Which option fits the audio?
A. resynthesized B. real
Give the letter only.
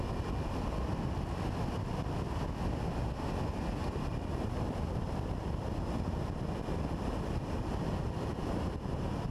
B